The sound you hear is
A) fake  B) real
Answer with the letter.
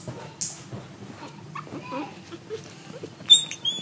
B